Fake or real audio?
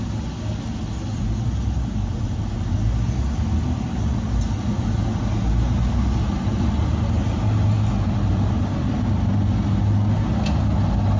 real